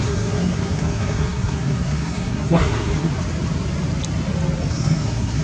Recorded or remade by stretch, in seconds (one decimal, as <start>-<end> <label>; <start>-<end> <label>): 0.0-3.1 remade; 3.1-4.7 recorded; 4.7-5.4 remade